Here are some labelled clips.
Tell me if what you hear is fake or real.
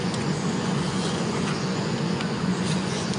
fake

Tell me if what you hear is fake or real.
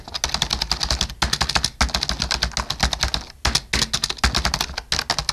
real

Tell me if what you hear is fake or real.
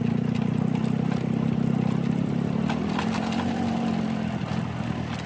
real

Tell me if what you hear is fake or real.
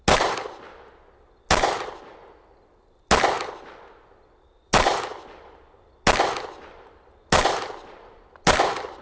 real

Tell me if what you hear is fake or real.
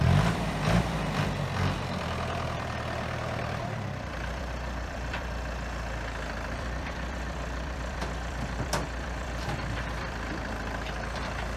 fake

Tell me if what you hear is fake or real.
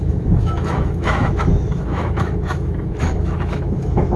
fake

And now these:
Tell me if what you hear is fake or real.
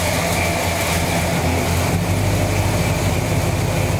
real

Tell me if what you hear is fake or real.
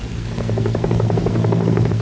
fake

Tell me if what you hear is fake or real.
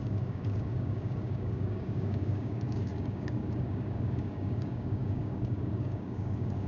fake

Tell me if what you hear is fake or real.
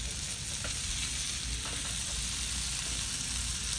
real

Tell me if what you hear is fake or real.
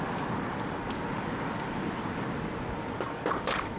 real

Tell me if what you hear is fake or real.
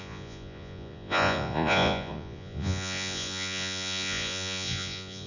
fake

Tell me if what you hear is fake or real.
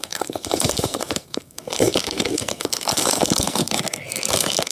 fake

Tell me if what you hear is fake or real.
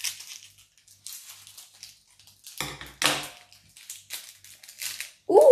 real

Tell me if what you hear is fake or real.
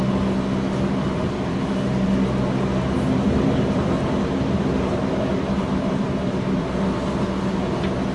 real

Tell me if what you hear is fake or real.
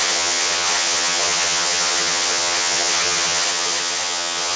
fake